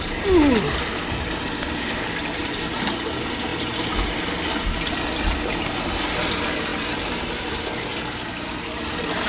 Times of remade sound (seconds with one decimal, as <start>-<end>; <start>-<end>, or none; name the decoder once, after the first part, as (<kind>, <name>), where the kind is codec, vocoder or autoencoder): none